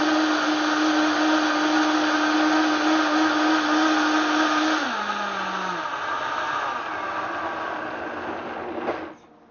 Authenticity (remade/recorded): recorded